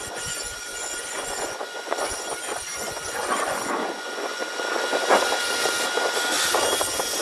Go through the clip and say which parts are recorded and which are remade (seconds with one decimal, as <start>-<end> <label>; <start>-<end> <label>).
0.0-4.4 remade; 4.4-7.2 recorded